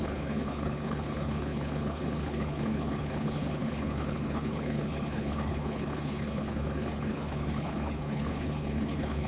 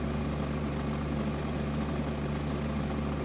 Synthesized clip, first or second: first